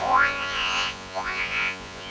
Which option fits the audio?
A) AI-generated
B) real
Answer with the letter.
A